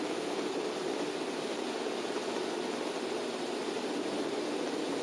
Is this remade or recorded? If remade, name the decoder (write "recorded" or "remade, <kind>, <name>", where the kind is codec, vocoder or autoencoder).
recorded